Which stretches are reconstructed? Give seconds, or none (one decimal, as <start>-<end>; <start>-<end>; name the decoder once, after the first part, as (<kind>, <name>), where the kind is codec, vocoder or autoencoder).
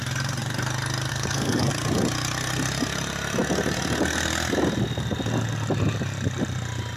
1.1-1.7 (codec, SNAC)